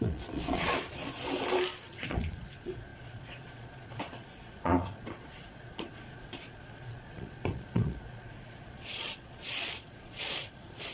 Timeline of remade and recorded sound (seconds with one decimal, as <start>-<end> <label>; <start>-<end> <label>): 0.0-1.0 remade; 1.0-1.8 recorded; 1.8-10.9 remade